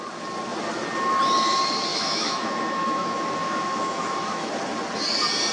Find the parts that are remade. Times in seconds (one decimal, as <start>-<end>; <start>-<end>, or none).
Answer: 1.9-4.5

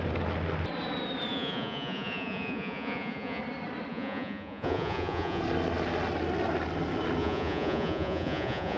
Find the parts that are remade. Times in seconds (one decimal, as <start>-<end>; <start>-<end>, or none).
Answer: 1.3-3.4; 3.9-5.4; 7.2-8.8

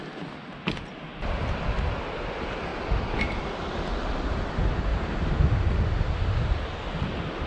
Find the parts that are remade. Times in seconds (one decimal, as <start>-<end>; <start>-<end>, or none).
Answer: none

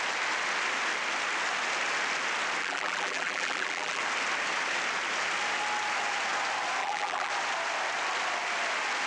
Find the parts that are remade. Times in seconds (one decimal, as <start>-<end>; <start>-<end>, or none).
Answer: 2.6-4.0; 6.8-7.3

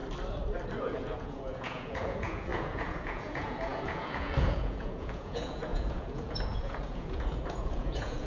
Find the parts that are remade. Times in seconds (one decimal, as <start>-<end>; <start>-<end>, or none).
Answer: 0.8-8.3